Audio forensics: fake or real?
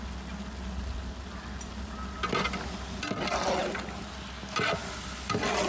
real